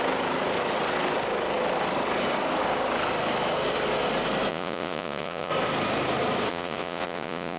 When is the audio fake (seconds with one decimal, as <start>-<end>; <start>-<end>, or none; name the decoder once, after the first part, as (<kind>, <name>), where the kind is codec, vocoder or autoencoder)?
4.5-5.5 (vocoder, Vocos); 6.5-7.6